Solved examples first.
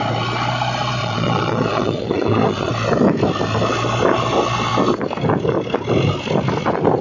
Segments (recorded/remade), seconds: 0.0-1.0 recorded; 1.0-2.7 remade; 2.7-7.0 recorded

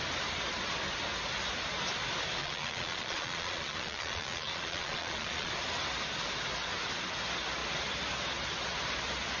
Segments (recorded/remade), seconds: 0.0-2.4 recorded; 2.4-5.5 remade; 5.5-9.4 recorded

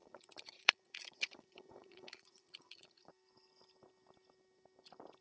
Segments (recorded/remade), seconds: 0.0-3.1 remade; 3.1-5.2 recorded

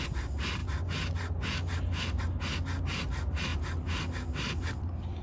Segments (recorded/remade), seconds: 0.0-5.2 recorded